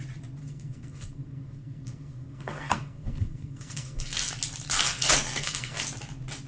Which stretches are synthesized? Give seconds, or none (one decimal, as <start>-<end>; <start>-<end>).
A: 0.4-4.3; 4.8-5.8